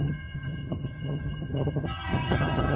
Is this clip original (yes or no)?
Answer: no